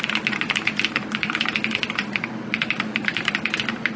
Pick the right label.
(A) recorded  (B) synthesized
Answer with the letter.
B